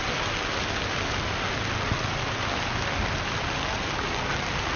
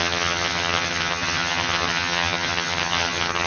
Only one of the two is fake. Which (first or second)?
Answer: second